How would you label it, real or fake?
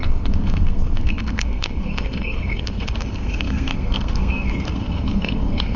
fake